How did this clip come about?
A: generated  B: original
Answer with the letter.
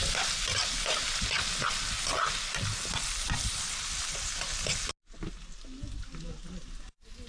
B